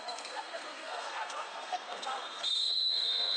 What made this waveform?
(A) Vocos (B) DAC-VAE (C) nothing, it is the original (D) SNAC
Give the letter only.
D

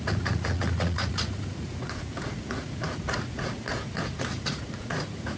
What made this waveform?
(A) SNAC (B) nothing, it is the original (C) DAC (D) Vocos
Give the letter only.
D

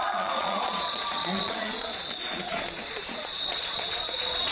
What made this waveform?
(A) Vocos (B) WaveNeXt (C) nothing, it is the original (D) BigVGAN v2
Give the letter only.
A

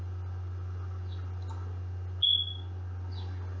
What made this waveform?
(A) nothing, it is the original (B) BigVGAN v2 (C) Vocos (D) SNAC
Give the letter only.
A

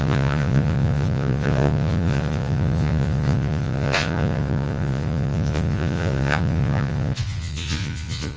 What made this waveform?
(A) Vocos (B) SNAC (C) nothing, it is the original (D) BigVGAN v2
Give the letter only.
A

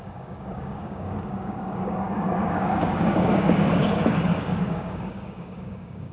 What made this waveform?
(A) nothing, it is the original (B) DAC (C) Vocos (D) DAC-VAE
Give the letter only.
B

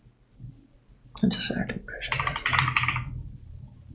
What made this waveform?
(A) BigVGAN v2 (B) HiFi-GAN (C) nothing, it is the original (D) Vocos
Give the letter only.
C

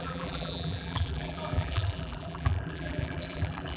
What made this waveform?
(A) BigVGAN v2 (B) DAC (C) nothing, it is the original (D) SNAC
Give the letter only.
A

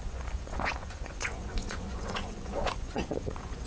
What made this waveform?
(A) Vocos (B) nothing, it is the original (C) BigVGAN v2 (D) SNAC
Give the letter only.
A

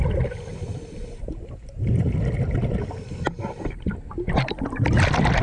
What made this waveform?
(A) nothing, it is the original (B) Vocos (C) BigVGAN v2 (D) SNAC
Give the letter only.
A